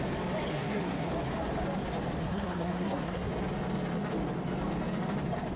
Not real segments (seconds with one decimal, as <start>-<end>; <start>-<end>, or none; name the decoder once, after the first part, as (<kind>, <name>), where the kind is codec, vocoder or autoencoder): 0.5-1.1 (codec, SNAC); 2.2-3.3

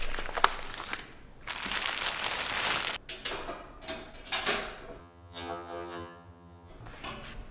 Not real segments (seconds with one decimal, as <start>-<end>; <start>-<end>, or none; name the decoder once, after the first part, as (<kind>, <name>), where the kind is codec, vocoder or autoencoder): 5.0-6.7 (vocoder, HiFi-GAN)

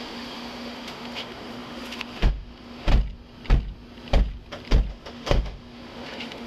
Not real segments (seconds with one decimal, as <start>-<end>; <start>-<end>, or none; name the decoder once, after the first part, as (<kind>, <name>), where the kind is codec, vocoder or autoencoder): 0.0-2.9 (autoencoder, DAC-VAE); 4.9-6.5

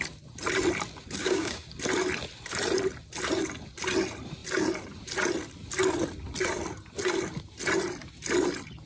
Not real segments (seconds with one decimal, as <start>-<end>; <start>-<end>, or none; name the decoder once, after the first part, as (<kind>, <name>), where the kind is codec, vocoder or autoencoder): 1.2-1.7 (codec, DAC)

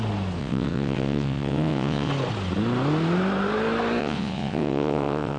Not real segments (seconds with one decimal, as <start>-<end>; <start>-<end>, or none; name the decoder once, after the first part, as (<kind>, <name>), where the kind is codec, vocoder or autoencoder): 0.4-2.1 (vocoder, WaveNeXt); 4.0-5.4

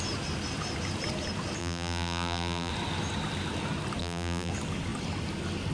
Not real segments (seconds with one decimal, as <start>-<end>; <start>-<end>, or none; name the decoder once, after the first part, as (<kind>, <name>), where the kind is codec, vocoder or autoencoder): 1.6-2.7 (vocoder, BigVGAN v2); 4.0-4.5

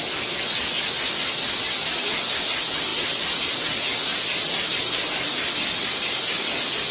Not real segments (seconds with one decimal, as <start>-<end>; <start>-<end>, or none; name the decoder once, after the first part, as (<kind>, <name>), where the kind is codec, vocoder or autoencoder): none